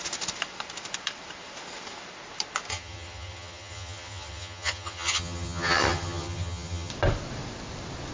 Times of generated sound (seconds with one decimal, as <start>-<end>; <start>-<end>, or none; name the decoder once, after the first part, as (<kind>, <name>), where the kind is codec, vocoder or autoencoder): 2.7-6.9 (vocoder, HiFi-GAN)